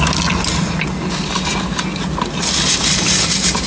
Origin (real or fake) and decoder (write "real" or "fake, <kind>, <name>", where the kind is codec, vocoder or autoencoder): real